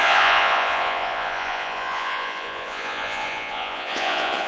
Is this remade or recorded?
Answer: remade